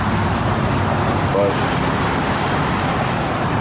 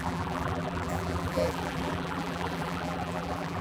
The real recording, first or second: first